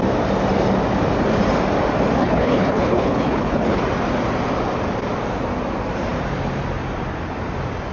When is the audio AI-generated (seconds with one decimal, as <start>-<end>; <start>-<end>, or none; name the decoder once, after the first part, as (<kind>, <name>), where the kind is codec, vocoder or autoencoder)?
2.2-3.8 (codec, HILCodec)